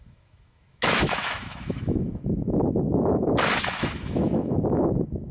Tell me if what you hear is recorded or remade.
remade